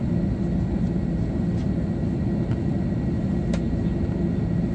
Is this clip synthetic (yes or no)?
no